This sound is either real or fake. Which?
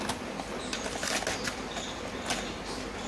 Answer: real